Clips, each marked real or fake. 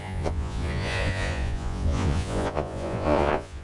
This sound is fake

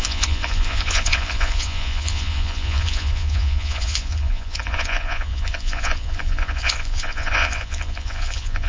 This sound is fake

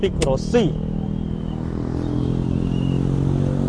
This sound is real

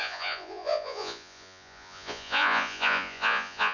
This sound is fake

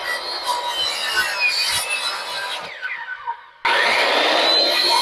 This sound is real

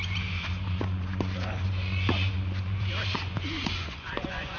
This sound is fake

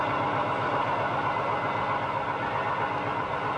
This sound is real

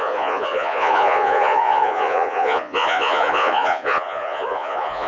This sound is fake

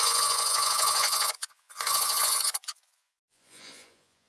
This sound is fake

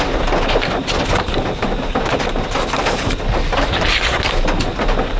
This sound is real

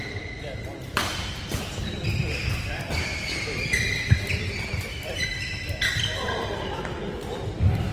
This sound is real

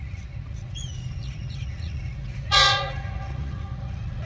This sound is fake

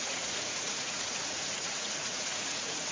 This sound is fake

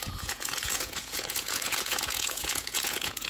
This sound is fake